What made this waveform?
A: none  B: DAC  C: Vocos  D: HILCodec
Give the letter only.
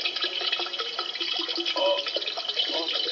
A